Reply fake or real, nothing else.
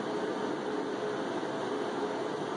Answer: real